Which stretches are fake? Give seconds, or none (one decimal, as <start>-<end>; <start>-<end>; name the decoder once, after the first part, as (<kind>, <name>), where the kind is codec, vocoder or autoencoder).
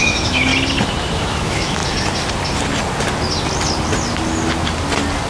0.0-0.5 (autoencoder, DAC-VAE); 1.2-1.8